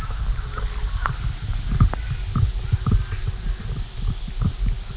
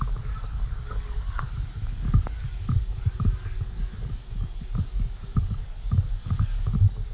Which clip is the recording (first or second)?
first